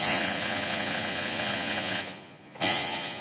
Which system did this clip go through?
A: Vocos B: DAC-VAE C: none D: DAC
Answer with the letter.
A